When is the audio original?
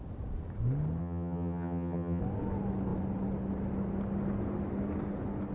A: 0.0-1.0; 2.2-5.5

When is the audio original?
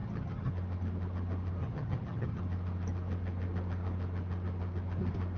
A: 0.5-1.6; 2.4-5.4